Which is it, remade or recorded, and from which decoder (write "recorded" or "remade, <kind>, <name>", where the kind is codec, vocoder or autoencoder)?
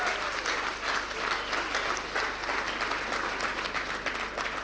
recorded